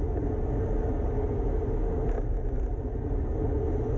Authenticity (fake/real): real